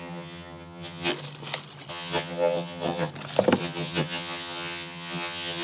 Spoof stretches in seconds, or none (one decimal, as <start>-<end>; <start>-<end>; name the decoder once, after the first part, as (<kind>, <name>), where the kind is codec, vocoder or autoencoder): 0.0-1.1 (vocoder, HiFi-GAN); 1.9-3.1; 3.6-5.6